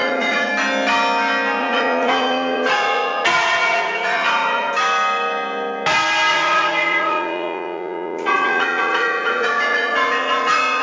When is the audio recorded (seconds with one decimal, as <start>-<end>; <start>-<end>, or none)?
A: 0.5-1.6; 4.7-6.3